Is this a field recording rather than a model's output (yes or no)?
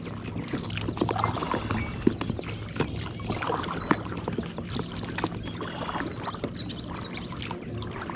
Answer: yes